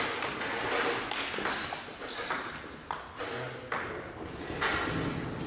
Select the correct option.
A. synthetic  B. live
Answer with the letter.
B